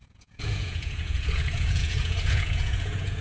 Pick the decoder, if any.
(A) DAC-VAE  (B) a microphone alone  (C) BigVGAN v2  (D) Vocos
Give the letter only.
D